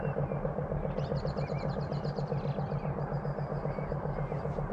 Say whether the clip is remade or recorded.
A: recorded